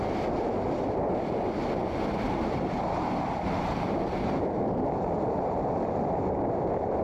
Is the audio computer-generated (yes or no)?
no